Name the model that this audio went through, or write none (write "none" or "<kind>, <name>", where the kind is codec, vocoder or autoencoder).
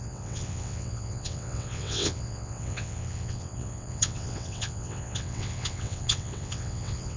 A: vocoder, WaveNeXt